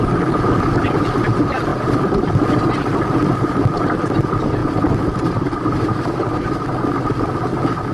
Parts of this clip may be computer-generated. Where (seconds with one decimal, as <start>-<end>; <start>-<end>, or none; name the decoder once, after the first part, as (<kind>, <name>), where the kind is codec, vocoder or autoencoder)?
1.7-2.3 (vocoder, BigVGAN v2); 4.6-6.5